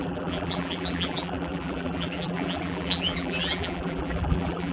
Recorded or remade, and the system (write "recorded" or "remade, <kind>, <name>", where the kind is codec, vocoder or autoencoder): remade, vocoder, BigVGAN v2